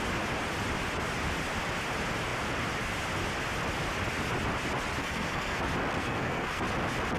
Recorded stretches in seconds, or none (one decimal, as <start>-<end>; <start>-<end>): 0.0-5.0; 5.6-6.0; 6.6-7.2